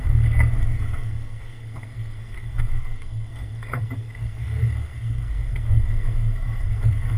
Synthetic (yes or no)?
yes